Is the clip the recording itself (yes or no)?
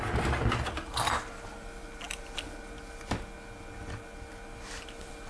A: yes